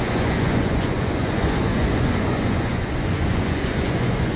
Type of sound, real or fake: fake